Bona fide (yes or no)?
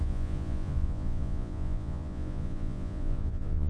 no